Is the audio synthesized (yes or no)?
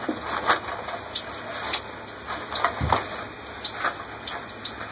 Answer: no